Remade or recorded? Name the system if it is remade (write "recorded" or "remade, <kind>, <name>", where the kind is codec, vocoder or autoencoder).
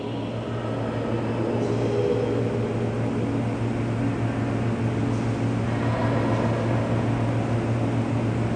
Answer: recorded